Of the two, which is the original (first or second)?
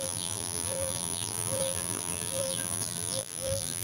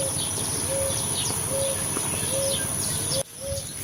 second